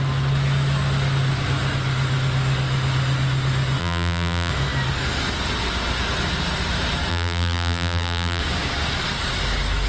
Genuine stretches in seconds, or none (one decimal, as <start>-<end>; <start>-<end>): 0.0-3.8; 4.5-7.1; 8.4-9.9